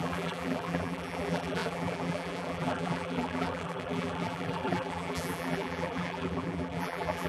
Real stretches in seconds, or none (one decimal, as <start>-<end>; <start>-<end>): none